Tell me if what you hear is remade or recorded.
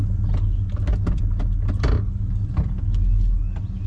recorded